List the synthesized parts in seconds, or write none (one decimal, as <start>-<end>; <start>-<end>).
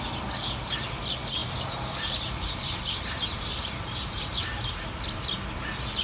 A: 1.4-5.0